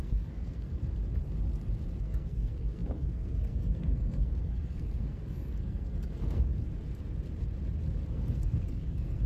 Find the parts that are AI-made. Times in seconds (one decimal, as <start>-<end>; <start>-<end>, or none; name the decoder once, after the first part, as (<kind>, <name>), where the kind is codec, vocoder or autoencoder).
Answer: 0.0-0.8 (codec, SNAC); 2.0-6.5; 8.1-9.3